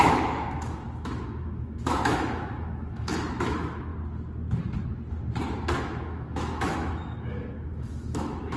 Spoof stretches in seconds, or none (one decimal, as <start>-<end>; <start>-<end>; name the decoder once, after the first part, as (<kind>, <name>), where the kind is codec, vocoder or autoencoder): 0.0-3.9 (autoencoder, DAC-VAE); 5.8-8.6